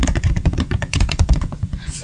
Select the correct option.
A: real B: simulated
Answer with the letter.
B